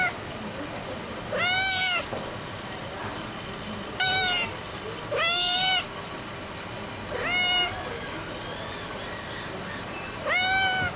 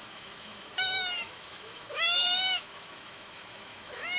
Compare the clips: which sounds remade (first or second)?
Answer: second